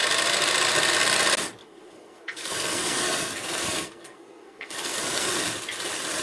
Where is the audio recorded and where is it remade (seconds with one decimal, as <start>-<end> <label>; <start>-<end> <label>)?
0.0-1.6 recorded; 1.6-5.3 remade; 5.3-6.2 recorded